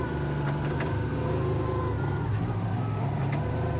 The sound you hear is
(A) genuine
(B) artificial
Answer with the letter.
B